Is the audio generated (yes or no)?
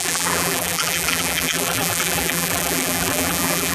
yes